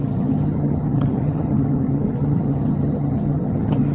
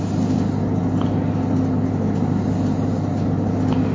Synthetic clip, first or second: first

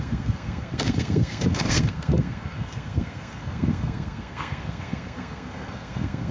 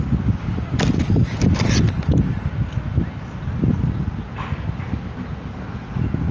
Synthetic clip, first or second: first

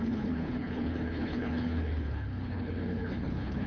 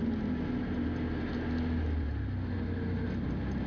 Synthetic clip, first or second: first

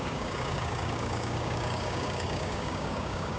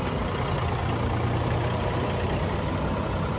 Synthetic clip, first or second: first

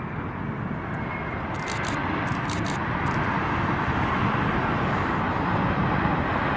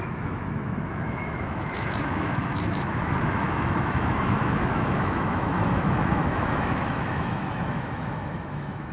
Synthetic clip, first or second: second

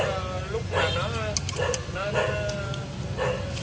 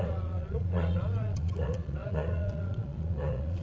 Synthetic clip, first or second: second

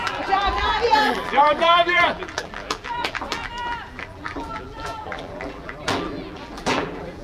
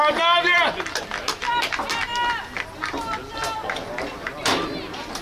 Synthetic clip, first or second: first